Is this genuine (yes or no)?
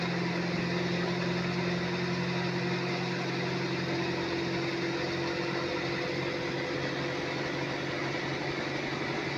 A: yes